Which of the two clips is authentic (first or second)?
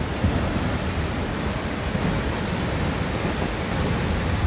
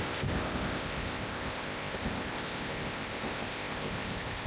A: first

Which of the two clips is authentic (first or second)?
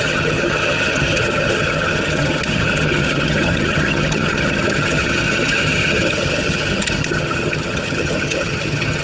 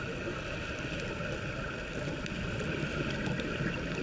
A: second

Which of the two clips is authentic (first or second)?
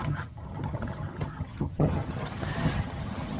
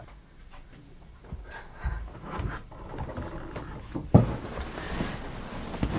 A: second